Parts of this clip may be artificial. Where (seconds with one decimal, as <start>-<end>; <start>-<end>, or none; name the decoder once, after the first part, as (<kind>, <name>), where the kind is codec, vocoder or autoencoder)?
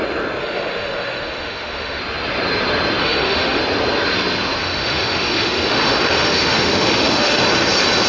0.4-2.0 (autoencoder, DAC-VAE); 3.0-3.6; 4.6-7.4